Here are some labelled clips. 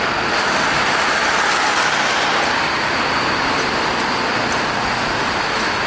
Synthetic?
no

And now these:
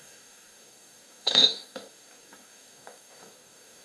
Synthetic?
yes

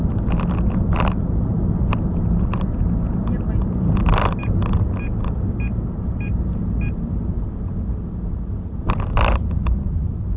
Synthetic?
no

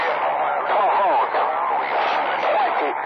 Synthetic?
no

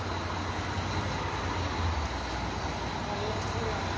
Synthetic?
no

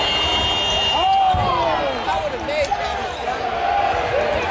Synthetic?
no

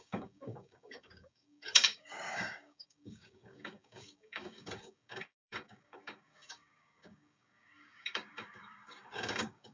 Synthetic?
yes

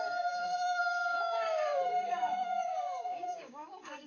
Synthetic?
yes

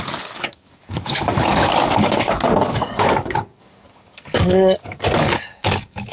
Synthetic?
yes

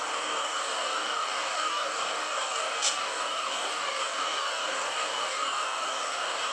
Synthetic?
yes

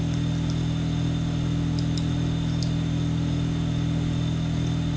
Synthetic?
no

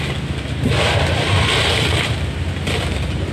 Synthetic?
no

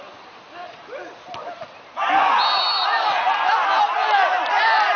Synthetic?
no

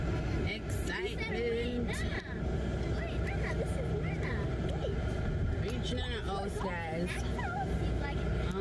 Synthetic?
no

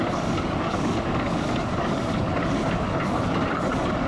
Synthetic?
yes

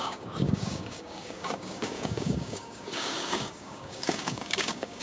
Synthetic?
yes